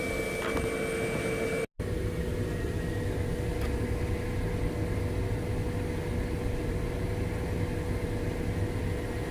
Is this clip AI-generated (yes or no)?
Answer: no